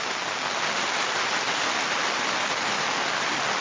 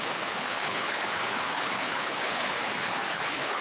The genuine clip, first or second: first